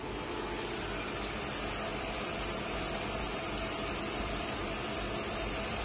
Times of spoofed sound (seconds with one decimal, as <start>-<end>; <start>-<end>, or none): 1.9-5.8